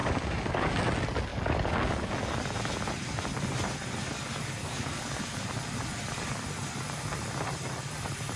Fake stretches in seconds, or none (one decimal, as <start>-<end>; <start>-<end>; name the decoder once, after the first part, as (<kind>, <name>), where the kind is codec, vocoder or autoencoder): 0.0-0.8 (codec, DAC); 1.3-2.1; 4.6-5.2